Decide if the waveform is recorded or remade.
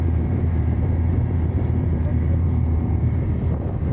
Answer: remade